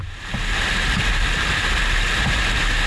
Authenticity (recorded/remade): recorded